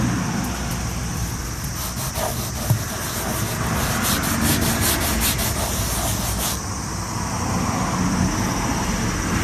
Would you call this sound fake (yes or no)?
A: no